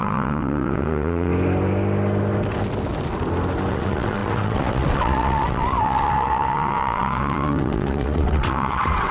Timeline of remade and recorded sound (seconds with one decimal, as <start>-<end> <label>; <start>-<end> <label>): 0.0-1.3 remade; 1.3-3.7 recorded; 3.7-9.1 remade